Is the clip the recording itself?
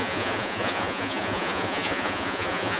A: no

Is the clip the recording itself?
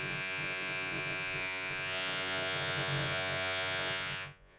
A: no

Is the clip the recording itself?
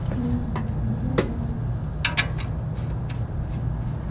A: yes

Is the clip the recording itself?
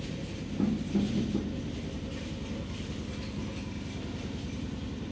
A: yes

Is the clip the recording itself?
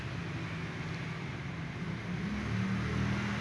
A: yes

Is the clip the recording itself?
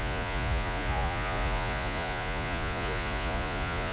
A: no